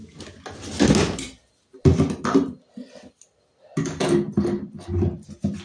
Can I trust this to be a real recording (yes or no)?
yes